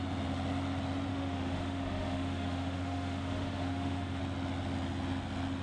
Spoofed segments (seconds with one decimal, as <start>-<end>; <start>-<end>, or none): 1.1-4.2